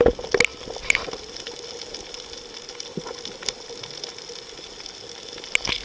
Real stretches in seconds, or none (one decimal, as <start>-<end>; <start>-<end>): 0.0-5.8